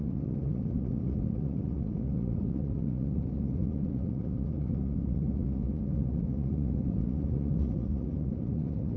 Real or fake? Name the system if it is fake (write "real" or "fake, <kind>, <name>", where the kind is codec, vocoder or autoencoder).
fake, vocoder, Vocos